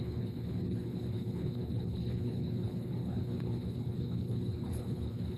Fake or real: fake